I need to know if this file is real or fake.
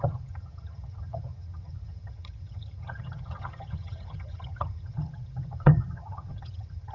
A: fake